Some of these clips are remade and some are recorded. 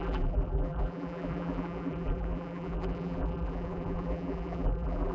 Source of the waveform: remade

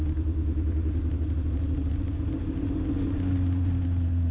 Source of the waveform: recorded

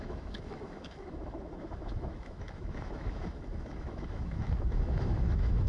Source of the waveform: remade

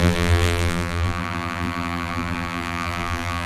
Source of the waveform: remade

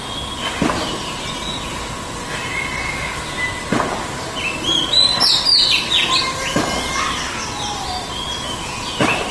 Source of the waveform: recorded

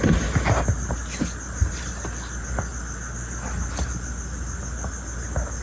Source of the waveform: recorded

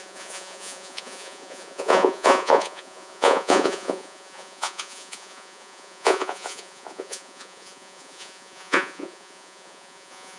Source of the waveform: remade